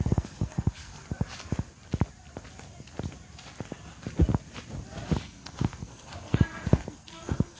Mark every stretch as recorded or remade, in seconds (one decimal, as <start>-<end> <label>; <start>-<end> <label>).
0.0-0.9 remade; 0.9-5.2 recorded; 5.2-7.6 remade